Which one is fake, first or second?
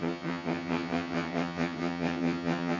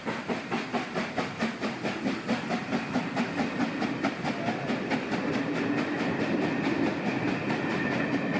first